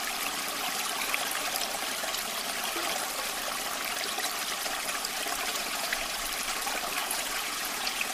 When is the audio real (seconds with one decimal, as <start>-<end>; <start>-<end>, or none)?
0.0-5.5; 6.2-7.0